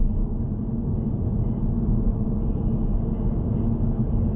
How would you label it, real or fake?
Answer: real